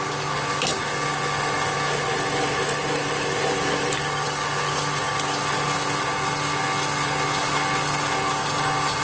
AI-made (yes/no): no